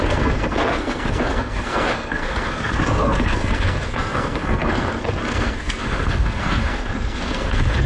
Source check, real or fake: fake